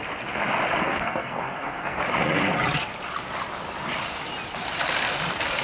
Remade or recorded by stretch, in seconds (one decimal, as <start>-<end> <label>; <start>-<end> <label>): 0.0-0.8 recorded; 0.8-2.0 remade; 2.0-5.6 recorded